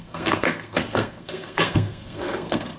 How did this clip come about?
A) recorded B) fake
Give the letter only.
B